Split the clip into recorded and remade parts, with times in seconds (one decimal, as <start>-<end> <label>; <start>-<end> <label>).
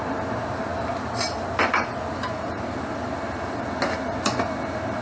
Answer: 0.0-5.0 recorded